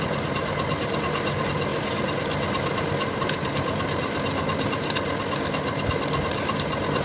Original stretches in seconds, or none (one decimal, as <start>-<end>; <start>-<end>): 0.0-7.0